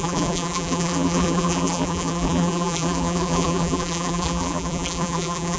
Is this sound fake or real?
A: fake